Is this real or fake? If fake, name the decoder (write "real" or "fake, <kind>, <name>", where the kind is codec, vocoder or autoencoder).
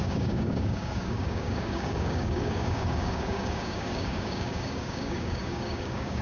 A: fake, codec, DAC